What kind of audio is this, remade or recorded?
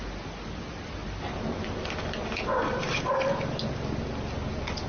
recorded